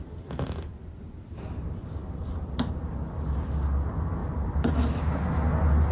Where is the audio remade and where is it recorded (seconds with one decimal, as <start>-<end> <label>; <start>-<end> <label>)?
0.0-0.7 recorded; 0.7-1.2 remade; 1.2-4.2 recorded; 4.2-4.7 remade; 4.7-5.9 recorded